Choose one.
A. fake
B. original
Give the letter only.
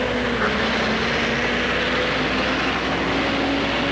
B